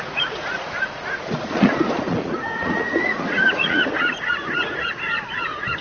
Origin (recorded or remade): remade